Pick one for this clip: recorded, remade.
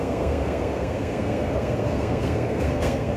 remade